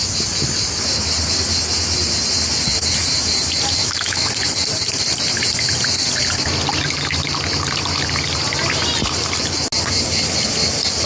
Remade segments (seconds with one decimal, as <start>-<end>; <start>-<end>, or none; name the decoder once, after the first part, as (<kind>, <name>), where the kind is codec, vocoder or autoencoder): 3.8-4.3 (autoencoder, DAC-VAE)